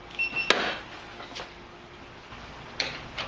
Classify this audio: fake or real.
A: real